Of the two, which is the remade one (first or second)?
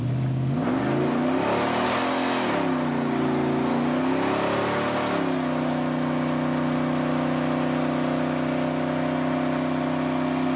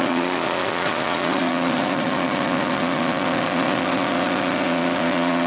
second